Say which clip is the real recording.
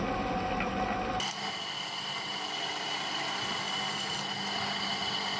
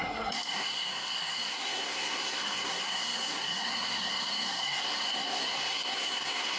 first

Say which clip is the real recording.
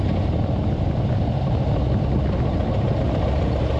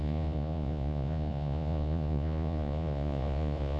first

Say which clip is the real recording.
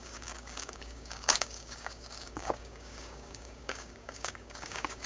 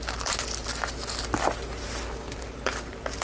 second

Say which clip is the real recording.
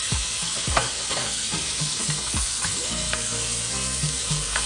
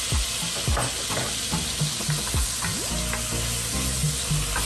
second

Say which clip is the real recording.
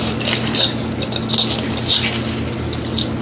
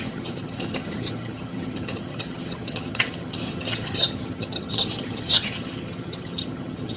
first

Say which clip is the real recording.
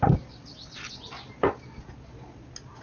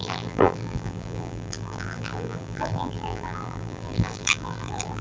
first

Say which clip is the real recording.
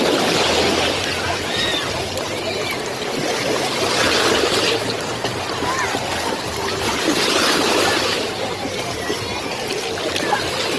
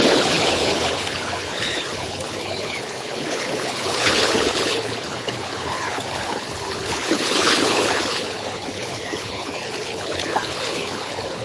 first